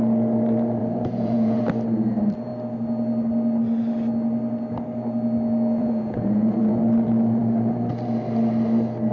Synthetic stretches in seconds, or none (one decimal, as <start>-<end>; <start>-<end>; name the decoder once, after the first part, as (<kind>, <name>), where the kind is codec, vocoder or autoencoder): 0.8-1.6 (vocoder, Vocos); 5.8-6.8